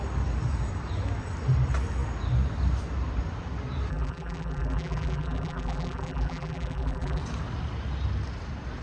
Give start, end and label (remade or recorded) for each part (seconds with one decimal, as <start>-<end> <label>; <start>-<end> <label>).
0.0-3.9 recorded; 3.9-7.2 remade; 7.2-8.8 recorded